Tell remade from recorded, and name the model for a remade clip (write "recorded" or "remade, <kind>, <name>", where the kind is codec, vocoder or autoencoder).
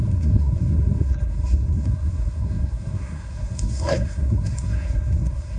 remade, codec, SNAC